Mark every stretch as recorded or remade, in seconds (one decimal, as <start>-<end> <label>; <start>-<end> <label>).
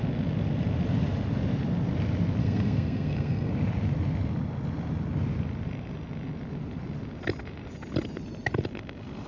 0.0-2.4 recorded; 2.4-3.5 remade; 3.5-9.3 recorded